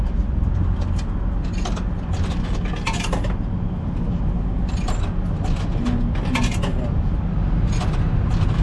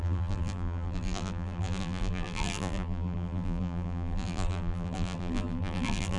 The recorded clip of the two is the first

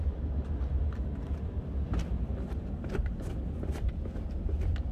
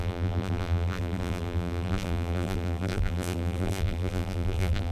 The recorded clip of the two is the first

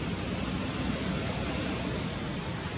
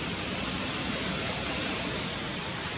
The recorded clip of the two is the first